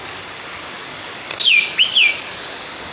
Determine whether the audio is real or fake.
fake